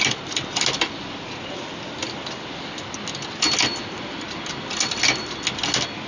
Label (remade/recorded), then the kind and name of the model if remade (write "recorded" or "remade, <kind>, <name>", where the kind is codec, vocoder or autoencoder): recorded